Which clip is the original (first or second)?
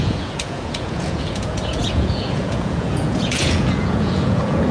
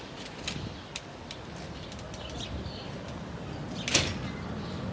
second